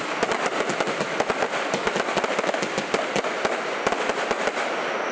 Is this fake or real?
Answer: real